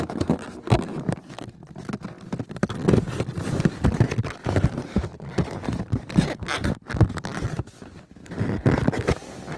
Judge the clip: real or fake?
real